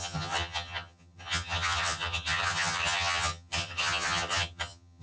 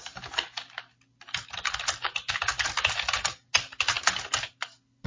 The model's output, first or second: first